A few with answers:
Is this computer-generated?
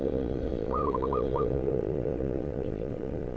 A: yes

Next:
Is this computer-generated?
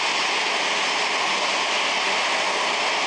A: no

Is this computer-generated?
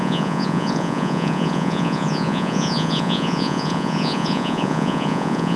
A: yes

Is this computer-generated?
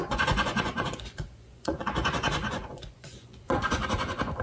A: yes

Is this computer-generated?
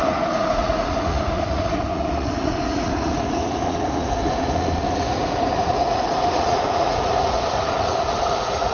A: yes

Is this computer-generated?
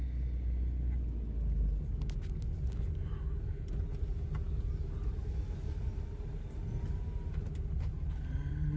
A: no